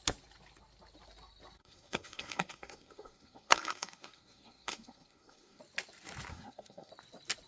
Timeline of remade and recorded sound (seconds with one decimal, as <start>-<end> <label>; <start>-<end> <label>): 0.0-1.6 recorded; 1.6-5.6 remade; 5.6-6.3 recorded; 6.3-6.9 remade; 6.9-7.5 recorded